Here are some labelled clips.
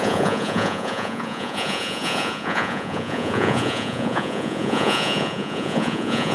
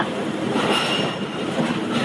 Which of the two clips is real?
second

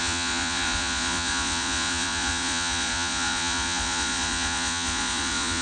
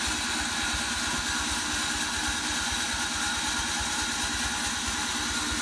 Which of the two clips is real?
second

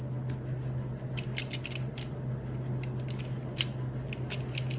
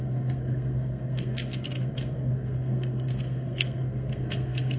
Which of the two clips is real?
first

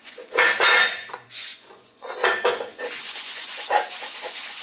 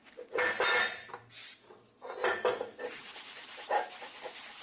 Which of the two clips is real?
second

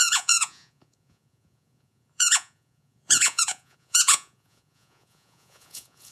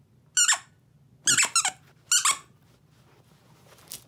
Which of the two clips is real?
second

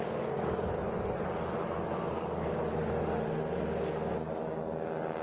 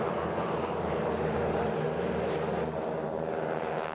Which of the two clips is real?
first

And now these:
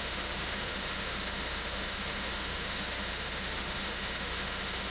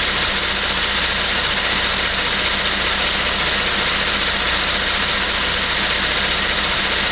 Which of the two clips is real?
second